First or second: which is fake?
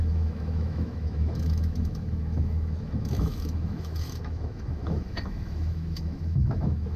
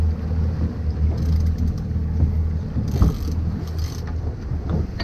first